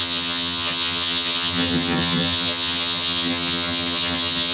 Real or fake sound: fake